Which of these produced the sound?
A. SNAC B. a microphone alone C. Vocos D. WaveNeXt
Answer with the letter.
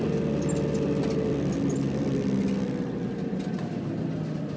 B